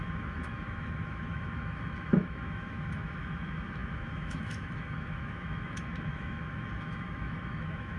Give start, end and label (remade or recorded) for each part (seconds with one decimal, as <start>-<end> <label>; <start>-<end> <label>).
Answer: 0.0-8.0 remade